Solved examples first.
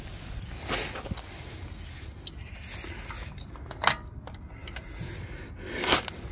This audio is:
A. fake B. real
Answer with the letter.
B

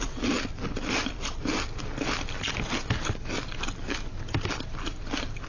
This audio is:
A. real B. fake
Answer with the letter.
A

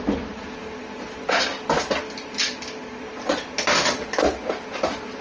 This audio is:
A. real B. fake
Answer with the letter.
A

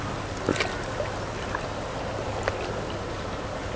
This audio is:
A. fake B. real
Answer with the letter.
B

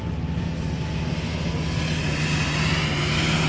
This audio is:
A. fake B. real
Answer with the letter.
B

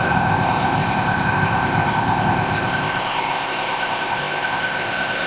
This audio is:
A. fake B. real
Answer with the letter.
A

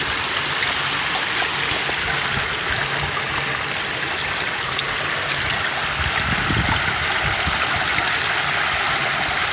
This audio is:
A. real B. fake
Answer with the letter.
A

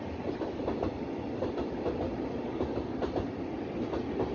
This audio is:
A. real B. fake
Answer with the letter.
A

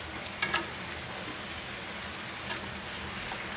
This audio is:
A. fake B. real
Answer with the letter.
B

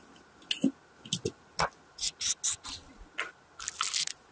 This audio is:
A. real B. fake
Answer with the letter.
A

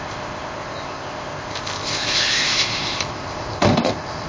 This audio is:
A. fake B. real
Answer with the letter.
A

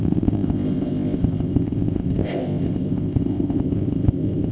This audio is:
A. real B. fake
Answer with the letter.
B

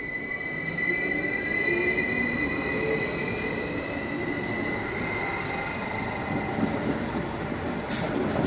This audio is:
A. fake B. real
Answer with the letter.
B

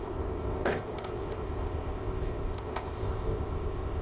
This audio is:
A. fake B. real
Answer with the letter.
A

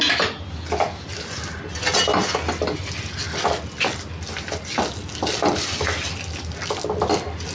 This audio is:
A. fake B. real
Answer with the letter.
B